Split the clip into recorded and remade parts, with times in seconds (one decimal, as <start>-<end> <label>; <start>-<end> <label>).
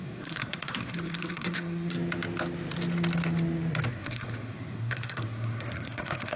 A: 0.0-1.9 remade; 1.9-3.9 recorded; 3.9-6.4 remade